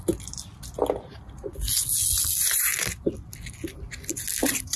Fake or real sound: real